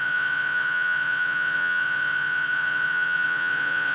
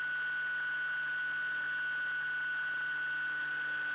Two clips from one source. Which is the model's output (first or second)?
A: first